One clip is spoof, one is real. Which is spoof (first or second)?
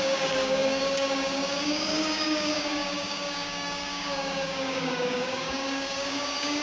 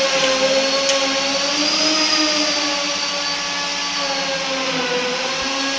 first